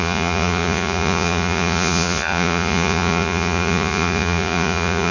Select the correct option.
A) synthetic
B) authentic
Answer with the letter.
A